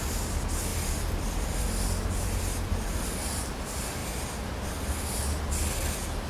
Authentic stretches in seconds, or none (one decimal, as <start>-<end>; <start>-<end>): 0.0-0.7; 3.5-6.3